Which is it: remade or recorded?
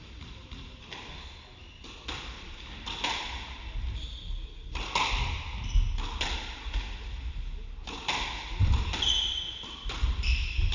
recorded